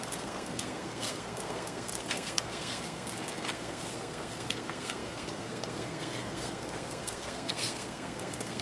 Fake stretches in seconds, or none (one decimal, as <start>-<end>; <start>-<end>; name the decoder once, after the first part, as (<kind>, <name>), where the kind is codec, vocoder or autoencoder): 0.0-8.6 (codec, SNAC)